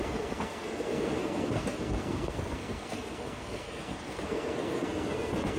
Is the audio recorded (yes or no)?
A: no